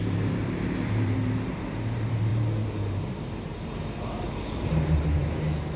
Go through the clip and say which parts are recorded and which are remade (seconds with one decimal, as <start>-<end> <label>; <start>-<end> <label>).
0.0-2.3 remade; 2.3-4.5 recorded; 4.5-5.2 remade; 5.2-5.8 recorded